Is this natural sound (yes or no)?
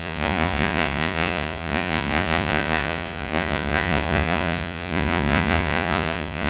no